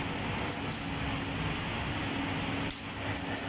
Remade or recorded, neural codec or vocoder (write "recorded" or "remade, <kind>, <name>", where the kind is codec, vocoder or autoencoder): recorded